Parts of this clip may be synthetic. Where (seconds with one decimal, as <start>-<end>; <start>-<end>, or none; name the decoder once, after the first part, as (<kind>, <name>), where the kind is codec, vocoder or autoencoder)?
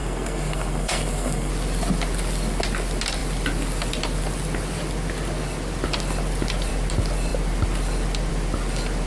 0.0-1.5 (codec, SNAC)